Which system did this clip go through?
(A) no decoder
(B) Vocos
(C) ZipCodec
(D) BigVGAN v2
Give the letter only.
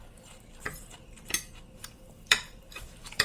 D